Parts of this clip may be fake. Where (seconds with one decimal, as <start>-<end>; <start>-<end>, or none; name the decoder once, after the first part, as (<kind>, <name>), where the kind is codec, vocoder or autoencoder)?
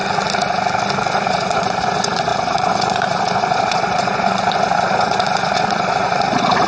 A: 1.2-6.7 (vocoder, Vocos)